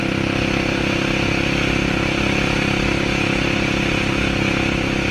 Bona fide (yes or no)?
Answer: yes